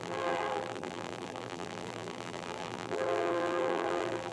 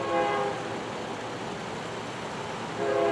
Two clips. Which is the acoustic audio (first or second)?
second